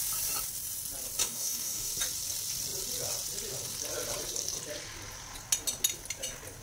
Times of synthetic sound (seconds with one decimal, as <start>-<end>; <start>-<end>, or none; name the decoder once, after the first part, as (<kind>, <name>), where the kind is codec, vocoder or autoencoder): 1.2-1.9 (codec, DAC)

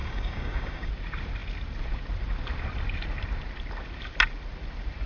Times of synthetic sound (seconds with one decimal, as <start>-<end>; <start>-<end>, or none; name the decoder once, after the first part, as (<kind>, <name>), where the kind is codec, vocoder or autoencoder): 0.0-0.9 (codec, DAC)